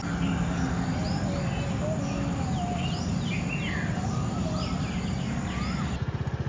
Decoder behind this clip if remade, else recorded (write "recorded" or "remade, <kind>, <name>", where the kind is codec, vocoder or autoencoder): recorded